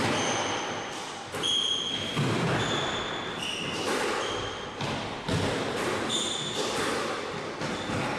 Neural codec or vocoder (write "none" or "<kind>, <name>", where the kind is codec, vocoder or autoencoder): none